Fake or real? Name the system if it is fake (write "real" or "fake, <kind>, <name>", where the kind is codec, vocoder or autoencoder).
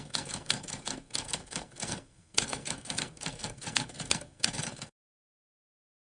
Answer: fake, codec, SNAC